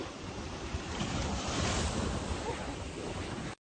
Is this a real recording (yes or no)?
yes